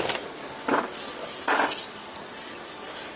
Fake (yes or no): no